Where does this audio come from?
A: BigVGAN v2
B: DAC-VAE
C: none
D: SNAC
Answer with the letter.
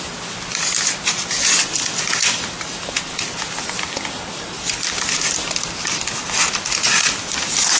A